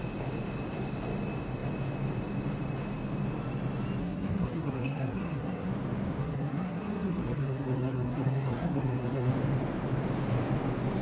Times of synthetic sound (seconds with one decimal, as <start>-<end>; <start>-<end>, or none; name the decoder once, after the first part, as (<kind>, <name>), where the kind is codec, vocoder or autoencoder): 4.0-5.7 (codec, SNAC); 6.2-9.3